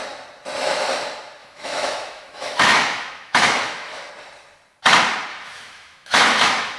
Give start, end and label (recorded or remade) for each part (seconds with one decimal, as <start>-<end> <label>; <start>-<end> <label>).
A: 0.0-1.4 recorded; 1.4-4.1 remade; 4.1-5.3 recorded; 5.3-6.8 remade